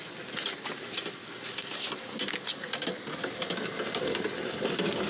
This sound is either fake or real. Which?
real